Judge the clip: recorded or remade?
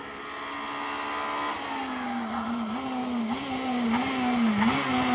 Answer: recorded